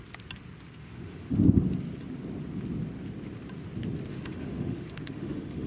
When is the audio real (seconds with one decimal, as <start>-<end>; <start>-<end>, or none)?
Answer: 0.0-0.8; 1.3-4.1